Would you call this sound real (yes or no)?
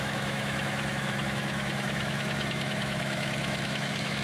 no